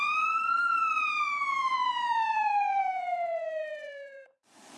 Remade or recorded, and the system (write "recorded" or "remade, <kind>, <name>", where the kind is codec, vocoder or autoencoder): remade, vocoder, Vocos